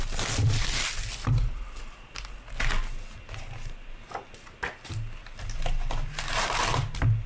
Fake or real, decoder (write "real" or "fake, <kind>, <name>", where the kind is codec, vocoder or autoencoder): real